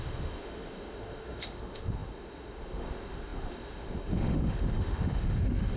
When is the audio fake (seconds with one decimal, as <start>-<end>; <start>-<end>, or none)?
0.0-5.8